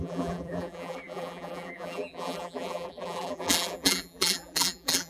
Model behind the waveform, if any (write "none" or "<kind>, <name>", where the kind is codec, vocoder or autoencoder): vocoder, BigVGAN v2